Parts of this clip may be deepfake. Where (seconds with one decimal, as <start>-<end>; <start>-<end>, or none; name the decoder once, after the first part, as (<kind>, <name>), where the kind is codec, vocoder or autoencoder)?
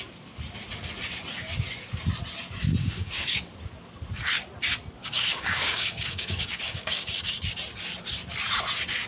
2.8-3.4 (codec, DAC); 5.0-7.2